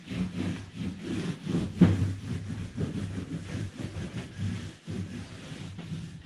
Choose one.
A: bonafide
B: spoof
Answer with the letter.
A